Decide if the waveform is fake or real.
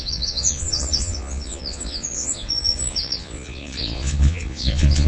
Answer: fake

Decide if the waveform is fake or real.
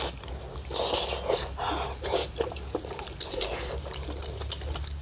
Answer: real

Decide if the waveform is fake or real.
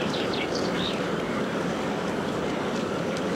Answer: fake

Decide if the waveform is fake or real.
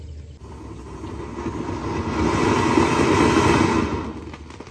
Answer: real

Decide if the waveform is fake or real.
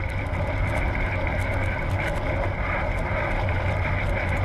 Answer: real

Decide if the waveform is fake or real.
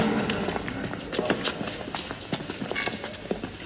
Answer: real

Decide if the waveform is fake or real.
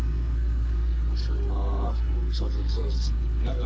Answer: fake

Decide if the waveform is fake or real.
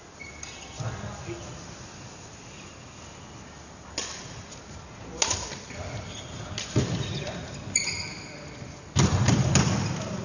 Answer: real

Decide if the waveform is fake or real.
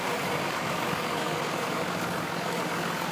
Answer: fake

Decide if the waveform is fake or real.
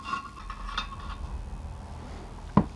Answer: real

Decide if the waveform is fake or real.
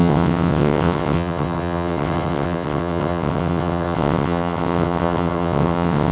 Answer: fake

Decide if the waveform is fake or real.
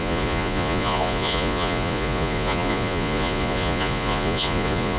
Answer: fake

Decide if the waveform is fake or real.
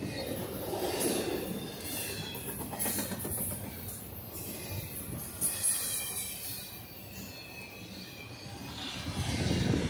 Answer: real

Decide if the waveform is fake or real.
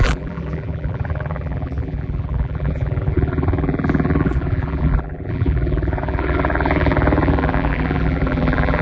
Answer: fake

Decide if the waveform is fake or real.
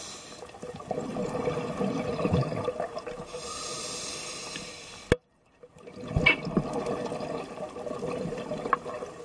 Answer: real